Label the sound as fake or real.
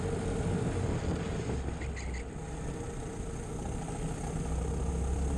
real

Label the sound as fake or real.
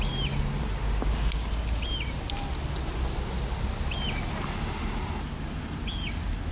real